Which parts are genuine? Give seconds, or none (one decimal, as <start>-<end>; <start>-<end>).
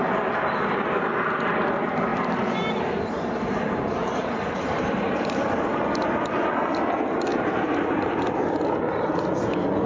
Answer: 0.0-2.1; 3.3-4.0; 5.4-7.3; 8.3-9.9